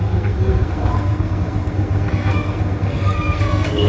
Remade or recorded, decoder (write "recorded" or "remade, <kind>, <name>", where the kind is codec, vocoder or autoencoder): remade, codec, SNAC